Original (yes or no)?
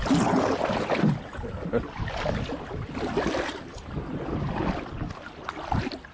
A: yes